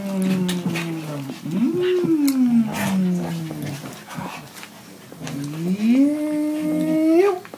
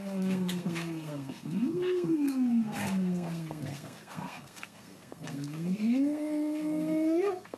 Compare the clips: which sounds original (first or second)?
first